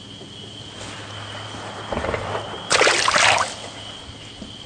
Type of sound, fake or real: real